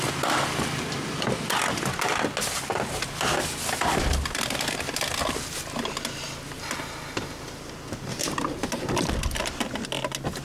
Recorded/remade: recorded